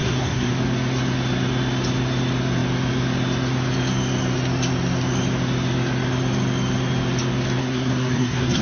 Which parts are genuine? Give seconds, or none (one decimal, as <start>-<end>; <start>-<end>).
0.5-7.6